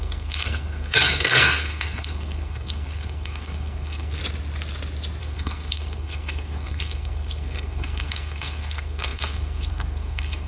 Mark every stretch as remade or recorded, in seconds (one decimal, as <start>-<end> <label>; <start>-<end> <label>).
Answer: 0.0-4.2 remade; 4.2-5.2 recorded; 5.2-10.5 remade